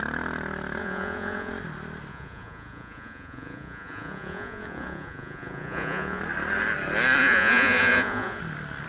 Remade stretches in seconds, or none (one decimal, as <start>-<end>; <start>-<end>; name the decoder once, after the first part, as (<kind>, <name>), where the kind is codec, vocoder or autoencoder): 0.8-1.5 (vocoder, Vocos); 2.1-6.2; 7.2-8.4